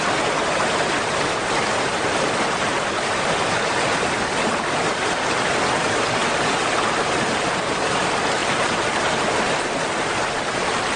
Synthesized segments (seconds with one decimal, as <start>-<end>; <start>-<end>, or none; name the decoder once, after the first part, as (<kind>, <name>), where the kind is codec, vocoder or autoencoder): none

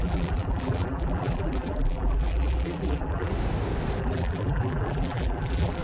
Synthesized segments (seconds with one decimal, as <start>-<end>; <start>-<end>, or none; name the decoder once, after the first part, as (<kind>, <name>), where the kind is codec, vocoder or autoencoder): 0.0-3.3 (vocoder, BigVGAN v2); 4.0-5.8

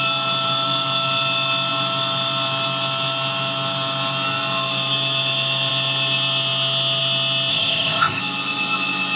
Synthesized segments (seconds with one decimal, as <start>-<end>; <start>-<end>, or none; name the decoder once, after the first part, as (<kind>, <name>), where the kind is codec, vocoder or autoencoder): 7.5-8.2 (codec, ZipCodec)